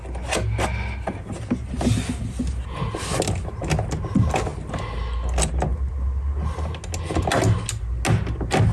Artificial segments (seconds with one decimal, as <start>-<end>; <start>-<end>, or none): none